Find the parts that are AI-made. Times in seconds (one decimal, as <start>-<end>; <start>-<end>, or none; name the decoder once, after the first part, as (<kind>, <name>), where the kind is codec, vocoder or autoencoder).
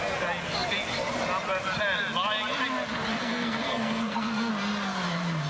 3.1-4.5 (codec, SNAC)